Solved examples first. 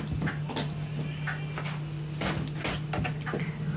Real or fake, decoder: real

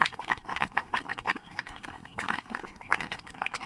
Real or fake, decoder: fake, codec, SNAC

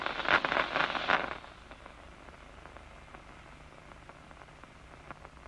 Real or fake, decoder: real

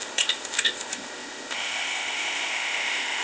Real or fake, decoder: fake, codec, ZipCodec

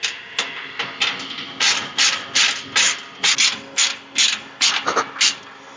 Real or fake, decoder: real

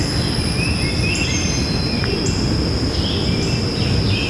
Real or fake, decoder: real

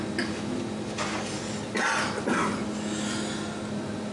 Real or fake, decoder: real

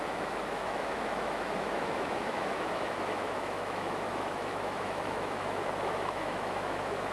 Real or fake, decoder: fake, autoencoder, DAC-VAE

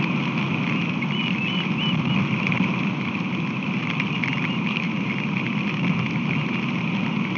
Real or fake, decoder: real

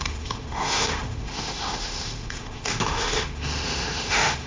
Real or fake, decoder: fake, autoencoder, DAC-VAE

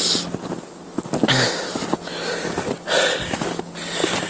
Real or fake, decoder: real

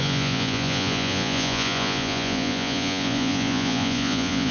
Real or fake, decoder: fake, vocoder, Vocos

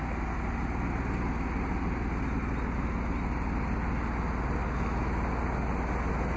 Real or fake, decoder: real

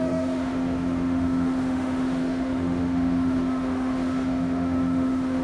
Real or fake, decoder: fake, autoencoder, DAC-VAE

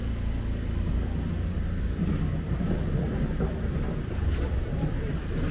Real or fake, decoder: real